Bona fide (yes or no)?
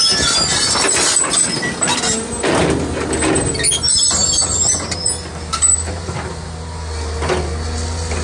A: yes